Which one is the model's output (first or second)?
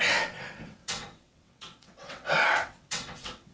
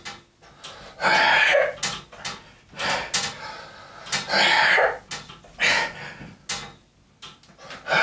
first